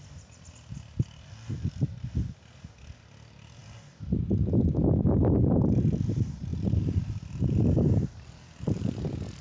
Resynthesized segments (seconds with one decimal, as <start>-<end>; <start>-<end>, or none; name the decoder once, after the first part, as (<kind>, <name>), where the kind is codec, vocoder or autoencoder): 6.5-7.0 (vocoder, BigVGAN v2)